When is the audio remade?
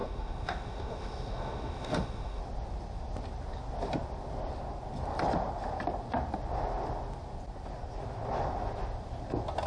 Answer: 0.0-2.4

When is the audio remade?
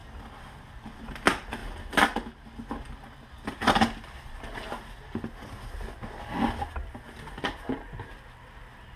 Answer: none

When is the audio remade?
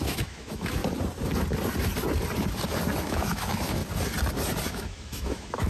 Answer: 0.0-0.8; 3.0-3.8; 4.7-5.7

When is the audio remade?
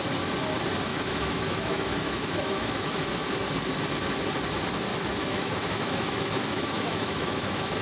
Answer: 0.9-3.1; 4.9-7.8